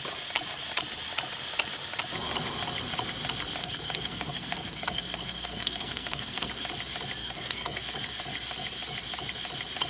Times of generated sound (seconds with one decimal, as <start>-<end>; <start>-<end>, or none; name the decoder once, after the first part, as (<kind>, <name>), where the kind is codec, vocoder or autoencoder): 3.6-6.5 (codec, SNAC); 7.2-7.8

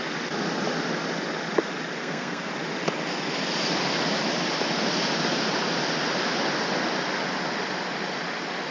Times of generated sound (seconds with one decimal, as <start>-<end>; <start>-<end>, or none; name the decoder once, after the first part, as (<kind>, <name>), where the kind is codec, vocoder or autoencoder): 2.0-2.5 (codec, SNAC)

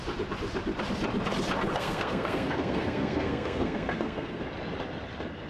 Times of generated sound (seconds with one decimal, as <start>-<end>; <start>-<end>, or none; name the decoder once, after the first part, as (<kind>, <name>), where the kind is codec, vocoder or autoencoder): 1.7-4.4 (codec, SNAC)

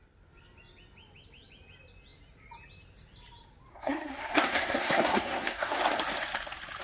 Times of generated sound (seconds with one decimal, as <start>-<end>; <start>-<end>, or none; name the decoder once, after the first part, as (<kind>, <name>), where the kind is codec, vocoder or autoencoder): 3.7-5.8 (codec, SNAC)

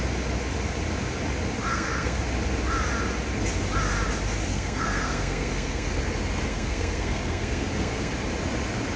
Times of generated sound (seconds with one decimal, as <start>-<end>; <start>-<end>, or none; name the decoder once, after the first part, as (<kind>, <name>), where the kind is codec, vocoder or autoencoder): 1.7-2.2 (codec, SNAC); 4.5-6.0; 6.5-8.1

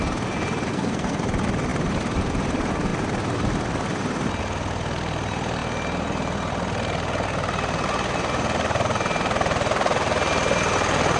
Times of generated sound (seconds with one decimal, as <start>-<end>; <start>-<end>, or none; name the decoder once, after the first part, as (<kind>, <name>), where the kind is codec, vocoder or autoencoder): 0.7-1.2 (codec, SNAC)

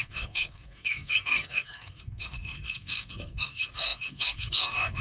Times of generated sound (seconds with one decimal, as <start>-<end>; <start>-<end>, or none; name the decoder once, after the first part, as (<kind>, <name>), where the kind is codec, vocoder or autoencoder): 0.0-5.0 (codec, SNAC)